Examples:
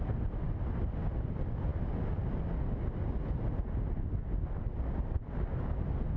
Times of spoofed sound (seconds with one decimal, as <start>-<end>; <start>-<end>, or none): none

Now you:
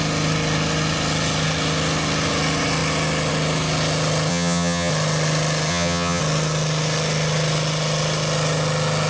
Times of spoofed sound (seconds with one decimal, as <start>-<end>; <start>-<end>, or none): 4.3-4.9; 5.7-6.2

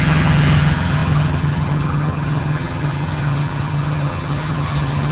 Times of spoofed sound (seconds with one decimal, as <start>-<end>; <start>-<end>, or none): 0.0-5.1

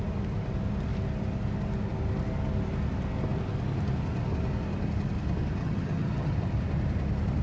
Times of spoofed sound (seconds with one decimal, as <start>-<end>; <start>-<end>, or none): 5.6-6.3